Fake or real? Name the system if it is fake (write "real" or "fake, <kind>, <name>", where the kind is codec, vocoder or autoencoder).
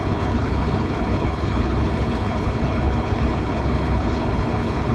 fake, codec, HILCodec